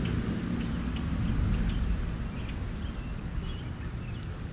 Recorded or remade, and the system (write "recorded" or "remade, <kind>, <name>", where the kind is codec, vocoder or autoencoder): recorded